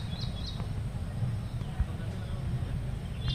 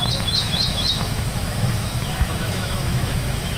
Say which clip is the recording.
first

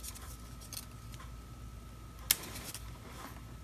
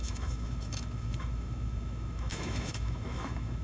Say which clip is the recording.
first